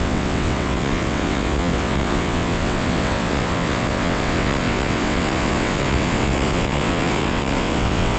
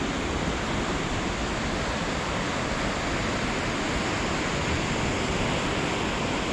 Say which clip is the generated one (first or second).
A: first